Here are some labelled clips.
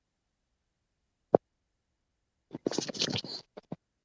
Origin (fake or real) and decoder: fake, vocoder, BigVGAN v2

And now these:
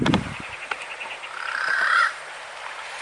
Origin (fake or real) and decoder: fake, vocoder, BigVGAN v2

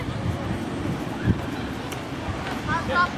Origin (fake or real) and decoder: real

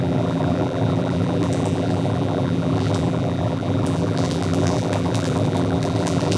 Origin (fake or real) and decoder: fake, vocoder, BigVGAN v2